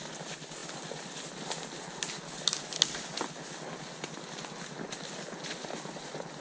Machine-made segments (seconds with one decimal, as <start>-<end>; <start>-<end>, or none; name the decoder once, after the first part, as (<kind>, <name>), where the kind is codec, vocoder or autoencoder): none